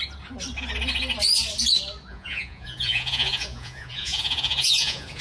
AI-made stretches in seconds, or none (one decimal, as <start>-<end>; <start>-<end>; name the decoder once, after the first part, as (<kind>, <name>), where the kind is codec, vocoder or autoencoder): 2.1-5.2 (vocoder, Vocos)